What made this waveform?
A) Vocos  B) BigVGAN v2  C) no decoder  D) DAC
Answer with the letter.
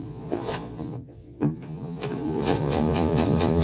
A